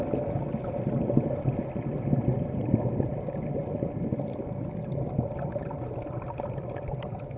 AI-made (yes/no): no